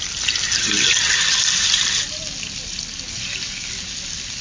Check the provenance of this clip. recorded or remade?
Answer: recorded